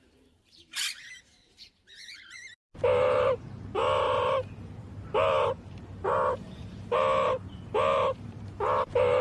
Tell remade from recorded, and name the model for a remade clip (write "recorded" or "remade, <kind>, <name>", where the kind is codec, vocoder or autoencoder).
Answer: remade, vocoder, BigVGAN v2